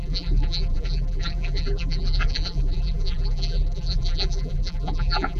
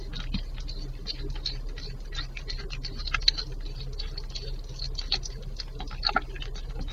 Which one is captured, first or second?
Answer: second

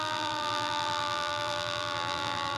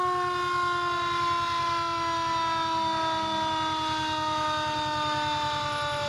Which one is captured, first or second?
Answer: second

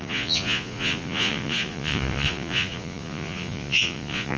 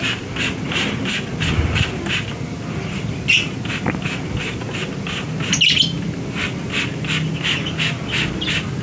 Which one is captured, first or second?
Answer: second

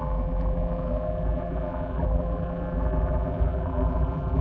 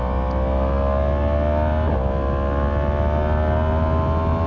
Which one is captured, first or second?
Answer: second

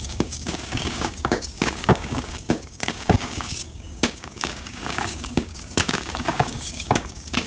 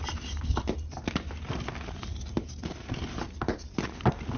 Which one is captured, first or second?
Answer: second